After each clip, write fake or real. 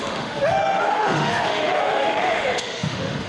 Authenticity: fake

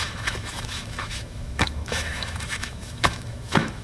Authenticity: fake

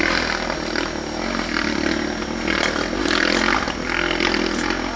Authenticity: real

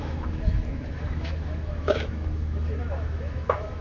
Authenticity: fake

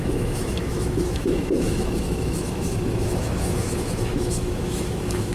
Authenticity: fake